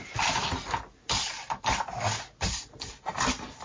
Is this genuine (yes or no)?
yes